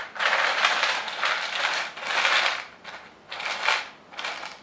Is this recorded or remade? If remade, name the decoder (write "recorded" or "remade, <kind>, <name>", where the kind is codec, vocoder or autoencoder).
recorded